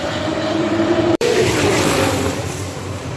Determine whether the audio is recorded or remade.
remade